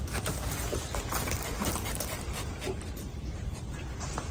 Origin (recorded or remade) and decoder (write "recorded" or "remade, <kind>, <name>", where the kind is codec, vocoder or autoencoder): recorded